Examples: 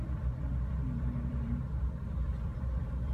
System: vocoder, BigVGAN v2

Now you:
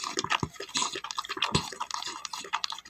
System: none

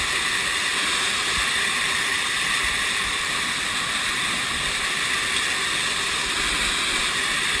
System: none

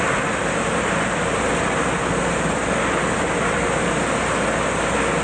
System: none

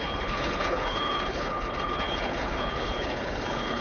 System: codec, HILCodec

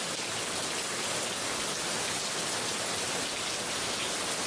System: none